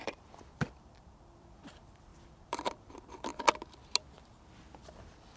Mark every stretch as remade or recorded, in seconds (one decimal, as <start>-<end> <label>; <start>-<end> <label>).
0.0-3.3 remade; 3.3-4.9 recorded; 4.9-5.4 remade